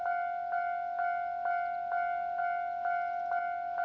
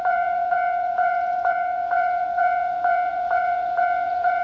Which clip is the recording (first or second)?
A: first